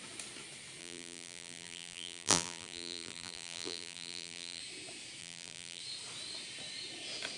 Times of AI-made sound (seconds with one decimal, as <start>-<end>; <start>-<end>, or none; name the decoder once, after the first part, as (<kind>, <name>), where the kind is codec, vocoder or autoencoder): 0.8-4.6 (vocoder, BigVGAN v2); 5.2-5.8